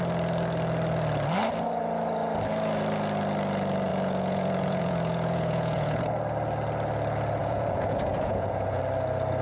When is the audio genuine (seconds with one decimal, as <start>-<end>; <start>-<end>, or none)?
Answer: 0.0-3.9; 6.0-7.4; 8.8-9.4